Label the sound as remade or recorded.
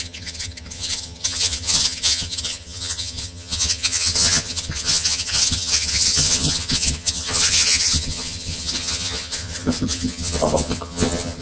remade